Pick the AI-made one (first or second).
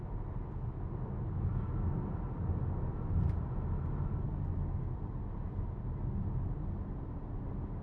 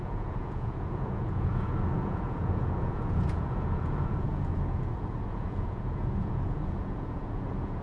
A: second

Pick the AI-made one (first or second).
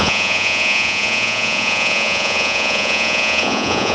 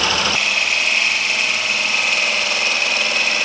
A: first